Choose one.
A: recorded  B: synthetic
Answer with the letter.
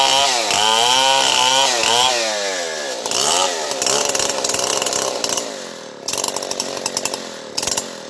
A